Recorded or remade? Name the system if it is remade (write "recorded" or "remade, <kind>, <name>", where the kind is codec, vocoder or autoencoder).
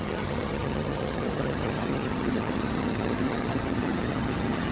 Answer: remade, vocoder, HiFi-GAN